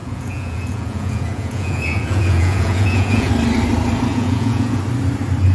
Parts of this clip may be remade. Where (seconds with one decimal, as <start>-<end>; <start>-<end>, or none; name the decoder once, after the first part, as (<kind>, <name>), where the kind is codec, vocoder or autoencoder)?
0.0-3.3 (vocoder, Vocos); 4.1-4.8